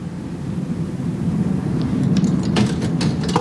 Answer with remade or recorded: recorded